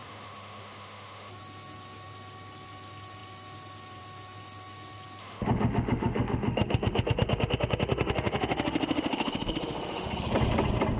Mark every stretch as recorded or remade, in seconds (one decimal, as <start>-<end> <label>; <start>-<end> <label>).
0.0-1.3 remade; 1.3-5.2 recorded; 5.2-10.2 remade; 10.2-11.0 recorded